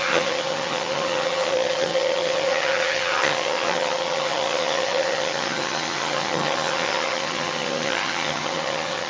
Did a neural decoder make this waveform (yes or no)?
yes